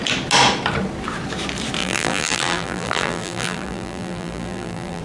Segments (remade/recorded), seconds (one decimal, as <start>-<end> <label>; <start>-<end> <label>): 0.0-1.8 recorded; 1.8-5.0 remade